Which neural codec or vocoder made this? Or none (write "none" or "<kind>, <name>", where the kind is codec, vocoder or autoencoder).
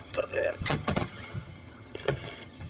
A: vocoder, HiFi-GAN